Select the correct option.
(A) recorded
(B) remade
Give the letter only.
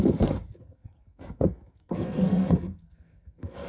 B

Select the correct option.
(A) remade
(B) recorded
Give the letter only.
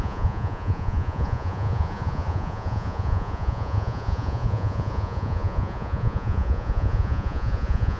A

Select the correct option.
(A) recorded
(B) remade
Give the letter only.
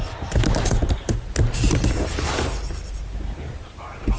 A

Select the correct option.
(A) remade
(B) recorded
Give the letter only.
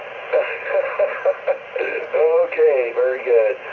B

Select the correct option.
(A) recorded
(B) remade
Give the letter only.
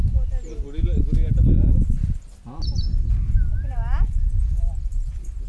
A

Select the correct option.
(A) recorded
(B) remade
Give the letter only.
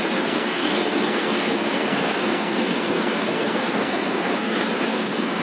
B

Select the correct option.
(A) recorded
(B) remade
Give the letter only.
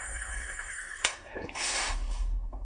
B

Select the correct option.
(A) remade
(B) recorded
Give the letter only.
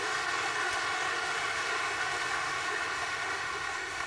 A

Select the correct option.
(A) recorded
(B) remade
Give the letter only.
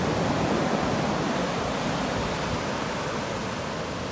A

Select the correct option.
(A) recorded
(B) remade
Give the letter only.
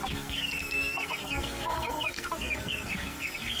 B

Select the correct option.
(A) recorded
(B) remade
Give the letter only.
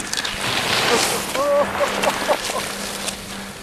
A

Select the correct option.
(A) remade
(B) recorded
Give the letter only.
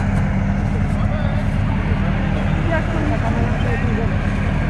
B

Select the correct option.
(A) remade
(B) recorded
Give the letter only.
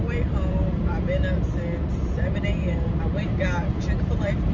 A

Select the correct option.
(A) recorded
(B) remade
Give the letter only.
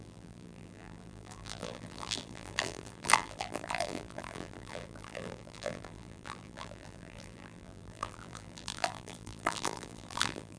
B